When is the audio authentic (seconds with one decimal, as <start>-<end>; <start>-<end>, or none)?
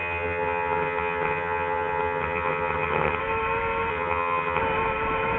3.2-3.9; 4.6-5.4